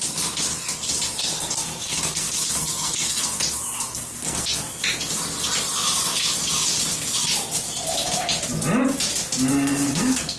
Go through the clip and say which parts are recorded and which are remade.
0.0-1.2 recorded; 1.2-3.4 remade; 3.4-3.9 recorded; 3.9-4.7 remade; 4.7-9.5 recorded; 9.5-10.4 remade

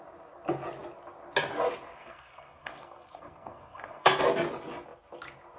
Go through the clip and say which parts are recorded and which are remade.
0.0-2.0 recorded; 2.0-4.2 remade; 4.2-5.6 recorded

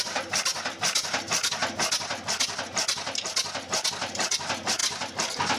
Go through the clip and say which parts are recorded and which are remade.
0.0-5.6 recorded

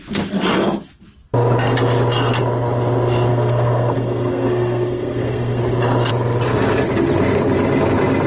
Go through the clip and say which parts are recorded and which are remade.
0.0-3.3 recorded; 3.3-5.6 remade; 5.6-8.3 recorded